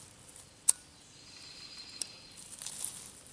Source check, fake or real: real